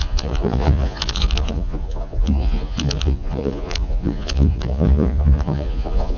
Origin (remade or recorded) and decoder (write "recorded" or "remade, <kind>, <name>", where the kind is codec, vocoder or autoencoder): remade, vocoder, Vocos